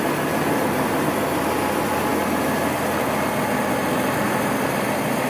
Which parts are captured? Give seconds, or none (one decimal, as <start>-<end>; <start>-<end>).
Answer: 0.0-5.3